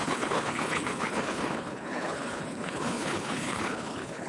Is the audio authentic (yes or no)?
no